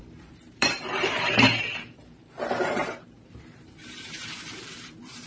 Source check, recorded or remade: remade